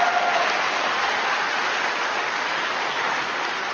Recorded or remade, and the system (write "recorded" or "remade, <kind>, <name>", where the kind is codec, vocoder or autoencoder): recorded